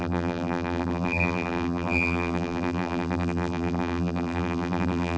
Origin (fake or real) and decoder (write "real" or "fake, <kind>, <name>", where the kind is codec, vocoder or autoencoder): fake, vocoder, BigVGAN v2